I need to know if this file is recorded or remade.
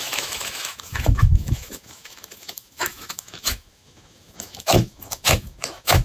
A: remade